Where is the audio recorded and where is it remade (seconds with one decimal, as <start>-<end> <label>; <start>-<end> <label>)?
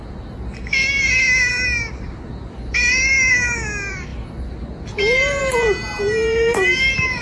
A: 0.0-7.2 recorded